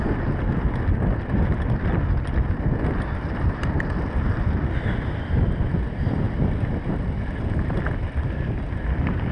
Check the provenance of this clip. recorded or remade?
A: recorded